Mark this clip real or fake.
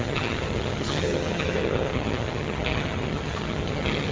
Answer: fake